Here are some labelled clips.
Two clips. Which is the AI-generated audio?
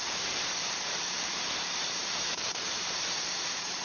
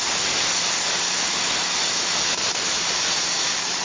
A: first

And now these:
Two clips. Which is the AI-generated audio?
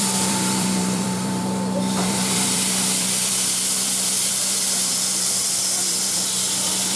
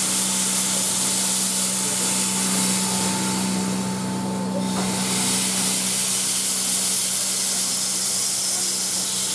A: first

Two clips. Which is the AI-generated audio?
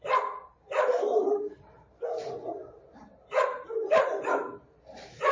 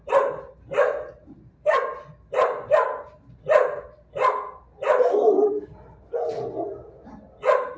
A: first